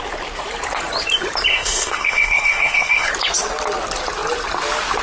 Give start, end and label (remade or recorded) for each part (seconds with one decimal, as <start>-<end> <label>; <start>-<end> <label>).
0.0-1.5 recorded; 1.5-3.1 remade; 3.1-5.0 recorded